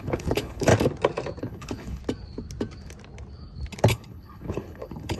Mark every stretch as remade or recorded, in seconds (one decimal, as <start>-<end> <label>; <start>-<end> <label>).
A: 0.0-0.7 remade; 0.7-1.4 recorded; 1.4-2.0 remade; 2.0-3.9 recorded; 3.9-5.2 remade

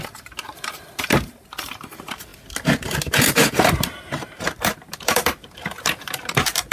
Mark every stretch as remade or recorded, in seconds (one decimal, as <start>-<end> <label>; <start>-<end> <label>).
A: 0.0-2.3 remade; 2.3-3.1 recorded; 3.1-6.7 remade

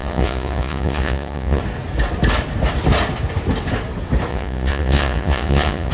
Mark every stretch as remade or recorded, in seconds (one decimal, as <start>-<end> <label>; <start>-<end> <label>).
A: 0.0-1.6 remade; 1.6-4.3 recorded; 4.3-5.9 remade

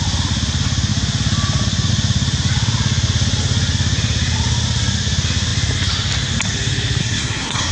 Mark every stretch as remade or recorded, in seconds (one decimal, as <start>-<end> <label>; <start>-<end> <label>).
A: 0.0-7.0 recorded; 7.0-7.7 remade

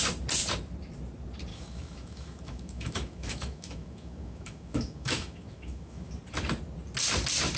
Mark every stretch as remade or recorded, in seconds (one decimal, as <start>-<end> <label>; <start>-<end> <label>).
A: 0.0-1.5 recorded; 1.5-6.1 remade; 6.1-7.6 recorded

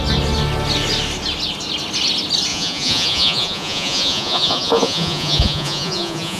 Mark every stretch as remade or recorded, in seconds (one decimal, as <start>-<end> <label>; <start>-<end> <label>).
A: 0.0-2.5 recorded; 2.5-6.4 remade